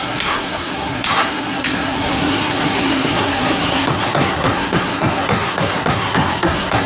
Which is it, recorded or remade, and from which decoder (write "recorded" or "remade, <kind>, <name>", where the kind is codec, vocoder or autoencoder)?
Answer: remade, codec, SNAC